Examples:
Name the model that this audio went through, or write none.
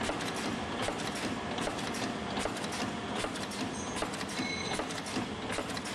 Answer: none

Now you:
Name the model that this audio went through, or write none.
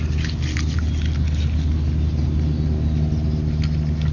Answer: none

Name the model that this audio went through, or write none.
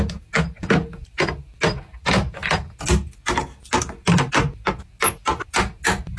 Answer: none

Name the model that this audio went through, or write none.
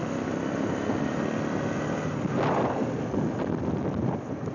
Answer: none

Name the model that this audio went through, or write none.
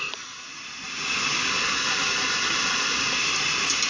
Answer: none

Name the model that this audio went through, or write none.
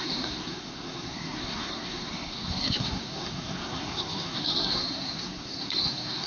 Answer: codec, SNAC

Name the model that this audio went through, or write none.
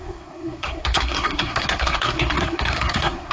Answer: codec, SNAC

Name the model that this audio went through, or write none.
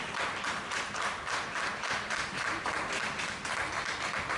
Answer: none